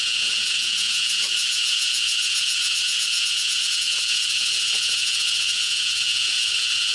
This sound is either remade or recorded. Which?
remade